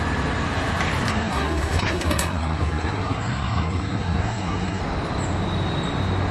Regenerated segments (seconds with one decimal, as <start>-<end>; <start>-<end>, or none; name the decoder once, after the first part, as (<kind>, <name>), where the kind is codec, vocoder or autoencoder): 1.1-4.8 (codec, SNAC)

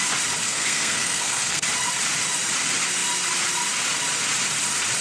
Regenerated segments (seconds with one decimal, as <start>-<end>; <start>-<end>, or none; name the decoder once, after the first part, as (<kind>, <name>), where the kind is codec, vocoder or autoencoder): 0.4-1.6 (codec, SNAC)

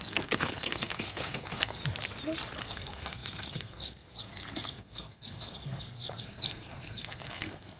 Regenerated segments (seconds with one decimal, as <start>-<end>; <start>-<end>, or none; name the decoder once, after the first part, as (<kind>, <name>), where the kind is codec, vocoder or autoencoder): 0.0-1.8 (codec, SNAC); 2.6-7.8